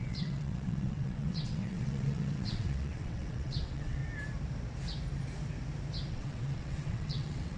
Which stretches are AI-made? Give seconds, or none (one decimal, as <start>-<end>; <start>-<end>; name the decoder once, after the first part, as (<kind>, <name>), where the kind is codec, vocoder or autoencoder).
0.0-4.0 (vocoder, WaveNeXt); 6.1-7.6